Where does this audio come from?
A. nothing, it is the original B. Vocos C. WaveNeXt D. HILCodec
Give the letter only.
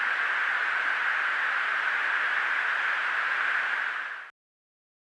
A